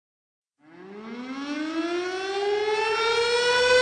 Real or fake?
real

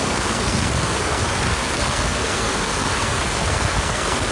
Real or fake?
fake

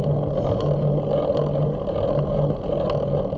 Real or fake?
real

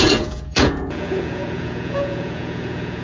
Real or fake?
fake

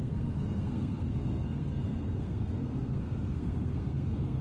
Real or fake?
fake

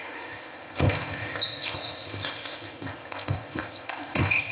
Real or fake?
fake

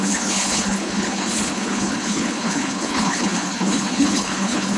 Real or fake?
fake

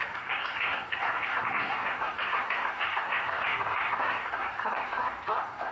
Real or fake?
fake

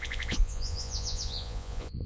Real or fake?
fake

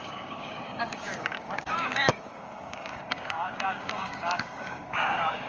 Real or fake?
fake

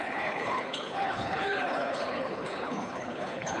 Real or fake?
fake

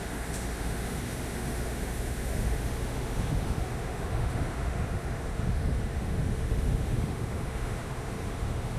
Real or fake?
fake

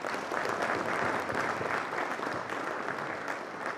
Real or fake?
real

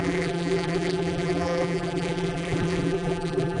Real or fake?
fake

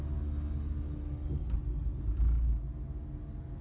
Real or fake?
real